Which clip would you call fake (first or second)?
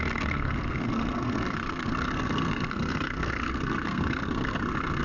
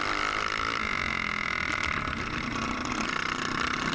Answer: first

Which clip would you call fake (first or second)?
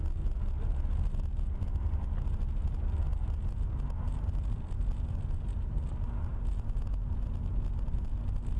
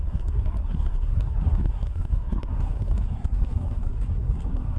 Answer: second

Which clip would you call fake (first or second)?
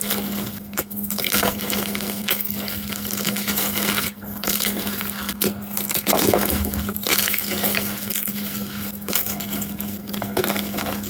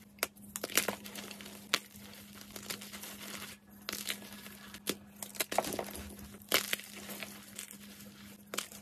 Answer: first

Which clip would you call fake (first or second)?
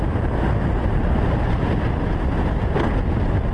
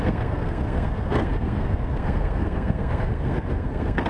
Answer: second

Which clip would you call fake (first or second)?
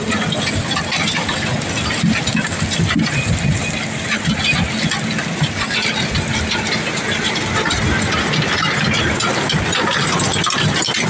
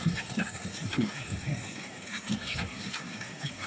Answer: second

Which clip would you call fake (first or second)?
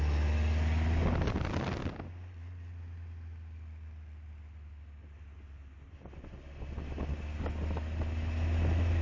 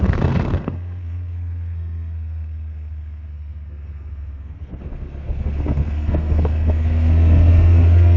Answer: second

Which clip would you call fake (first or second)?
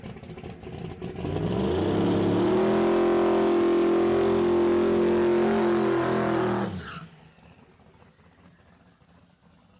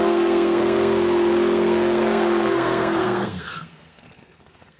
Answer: second